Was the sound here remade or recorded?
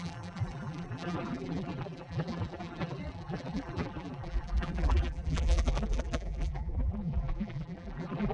remade